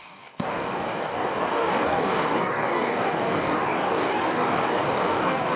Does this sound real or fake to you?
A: fake